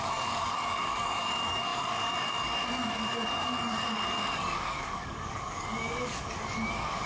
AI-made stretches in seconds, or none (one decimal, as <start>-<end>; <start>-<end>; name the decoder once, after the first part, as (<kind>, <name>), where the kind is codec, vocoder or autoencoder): 0.0-7.1 (codec, DAC)